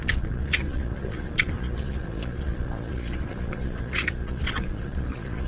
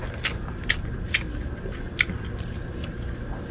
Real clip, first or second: second